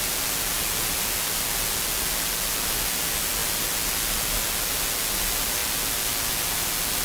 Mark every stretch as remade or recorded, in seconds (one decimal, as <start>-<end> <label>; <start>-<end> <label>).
0.0-7.0 recorded